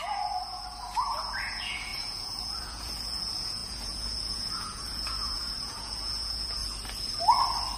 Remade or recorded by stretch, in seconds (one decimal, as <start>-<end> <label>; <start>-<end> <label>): 0.0-6.6 remade; 6.6-7.8 recorded